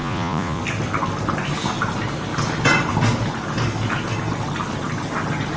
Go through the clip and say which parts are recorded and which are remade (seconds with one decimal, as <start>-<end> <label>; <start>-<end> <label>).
0.0-0.6 remade; 0.6-5.6 recorded